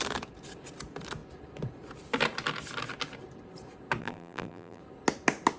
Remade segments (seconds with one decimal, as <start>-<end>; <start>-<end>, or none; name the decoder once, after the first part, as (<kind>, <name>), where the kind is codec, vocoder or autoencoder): 4.0-4.8 (vocoder, BigVGAN v2)